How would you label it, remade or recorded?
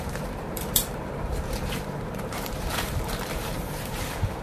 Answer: remade